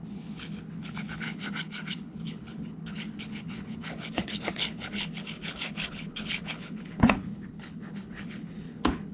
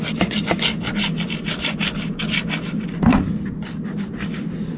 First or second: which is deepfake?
first